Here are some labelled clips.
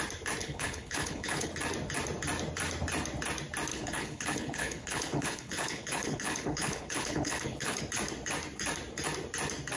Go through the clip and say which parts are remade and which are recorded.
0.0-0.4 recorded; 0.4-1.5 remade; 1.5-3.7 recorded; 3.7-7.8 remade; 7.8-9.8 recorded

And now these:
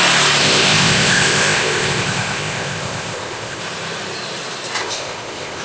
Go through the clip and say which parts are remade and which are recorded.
0.0-0.4 recorded; 0.4-3.6 remade; 3.6-4.8 recorded; 4.8-5.6 remade

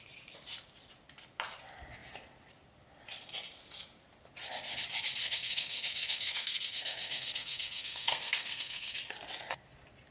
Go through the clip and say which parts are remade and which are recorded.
0.0-5.2 recorded; 5.2-9.0 remade; 9.0-10.1 recorded

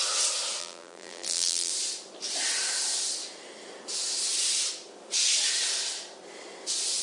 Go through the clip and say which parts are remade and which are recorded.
0.0-0.6 recorded; 0.6-1.7 remade; 1.7-7.0 recorded